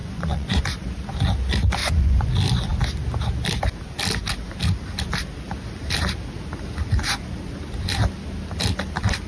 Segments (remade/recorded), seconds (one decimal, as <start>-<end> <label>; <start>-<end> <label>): 0.0-0.6 remade; 0.6-1.8 recorded; 1.8-2.3 remade; 2.3-9.3 recorded